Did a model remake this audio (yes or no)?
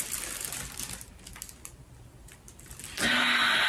no